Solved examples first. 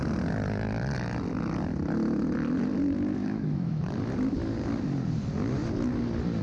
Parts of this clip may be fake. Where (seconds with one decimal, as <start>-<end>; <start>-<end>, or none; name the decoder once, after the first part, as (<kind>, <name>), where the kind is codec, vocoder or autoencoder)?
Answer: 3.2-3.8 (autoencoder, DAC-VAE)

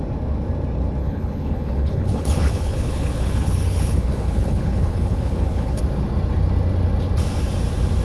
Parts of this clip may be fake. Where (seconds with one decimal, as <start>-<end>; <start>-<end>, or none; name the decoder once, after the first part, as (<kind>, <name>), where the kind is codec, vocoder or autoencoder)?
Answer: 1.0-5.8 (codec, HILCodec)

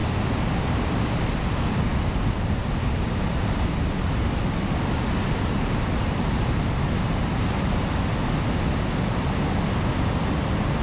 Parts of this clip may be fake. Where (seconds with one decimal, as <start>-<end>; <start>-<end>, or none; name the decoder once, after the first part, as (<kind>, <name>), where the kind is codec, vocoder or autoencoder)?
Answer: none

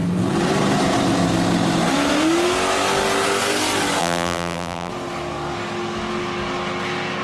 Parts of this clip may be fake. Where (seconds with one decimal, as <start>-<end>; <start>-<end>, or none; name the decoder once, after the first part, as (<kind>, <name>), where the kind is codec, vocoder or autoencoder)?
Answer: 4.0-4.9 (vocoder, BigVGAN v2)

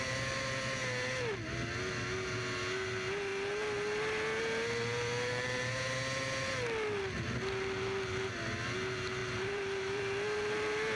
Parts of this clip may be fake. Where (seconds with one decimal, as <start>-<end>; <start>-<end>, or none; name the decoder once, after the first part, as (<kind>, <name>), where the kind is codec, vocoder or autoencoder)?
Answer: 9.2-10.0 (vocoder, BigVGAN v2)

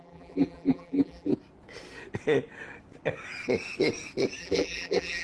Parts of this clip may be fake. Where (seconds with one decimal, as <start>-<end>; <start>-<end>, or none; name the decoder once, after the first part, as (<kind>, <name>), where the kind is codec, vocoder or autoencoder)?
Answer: 0.0-1.3 (vocoder, BigVGAN v2); 4.4-5.2

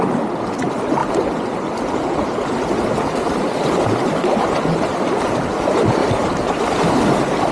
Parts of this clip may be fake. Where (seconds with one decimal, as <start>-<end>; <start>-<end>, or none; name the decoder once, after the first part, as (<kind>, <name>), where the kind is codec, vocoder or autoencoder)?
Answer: 6.0-7.0 (vocoder, BigVGAN v2)

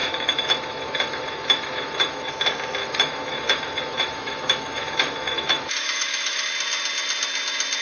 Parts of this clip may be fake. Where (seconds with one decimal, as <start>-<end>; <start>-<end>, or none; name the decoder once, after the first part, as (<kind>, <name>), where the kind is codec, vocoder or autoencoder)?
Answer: 0.0-2.3 (autoencoder, DAC-VAE); 2.8-6.5